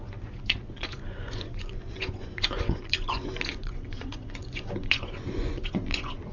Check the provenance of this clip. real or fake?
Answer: fake